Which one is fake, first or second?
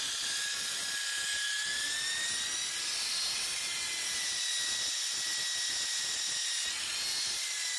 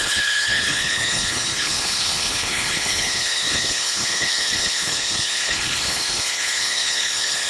second